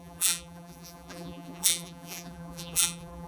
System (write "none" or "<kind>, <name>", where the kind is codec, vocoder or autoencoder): vocoder, BigVGAN v2